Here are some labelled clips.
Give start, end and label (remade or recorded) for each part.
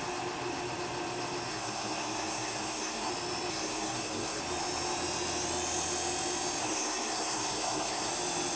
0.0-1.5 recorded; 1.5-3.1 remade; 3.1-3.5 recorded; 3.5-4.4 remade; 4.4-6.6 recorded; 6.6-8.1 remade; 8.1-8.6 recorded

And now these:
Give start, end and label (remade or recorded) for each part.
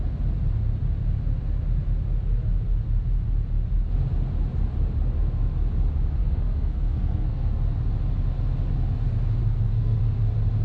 0.0-6.2 recorded; 6.2-7.6 remade; 7.6-9.4 recorded; 9.4-10.0 remade; 10.0-10.6 recorded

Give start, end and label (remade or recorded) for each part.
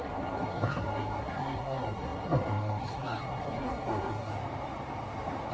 0.0-4.3 remade; 4.3-5.5 recorded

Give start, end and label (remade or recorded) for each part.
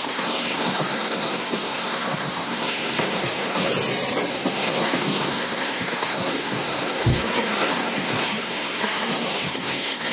0.0-3.7 remade; 3.7-4.3 recorded; 4.3-10.1 remade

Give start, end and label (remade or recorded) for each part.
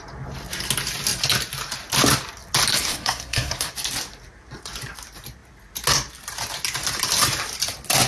0.0-2.9 recorded; 2.9-3.7 remade; 3.7-8.1 recorded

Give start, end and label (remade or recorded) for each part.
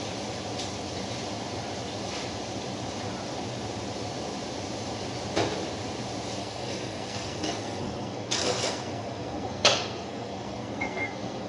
0.0-6.4 recorded; 6.4-11.5 remade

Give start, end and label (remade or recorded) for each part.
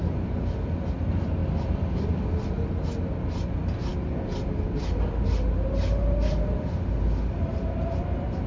0.0-8.5 recorded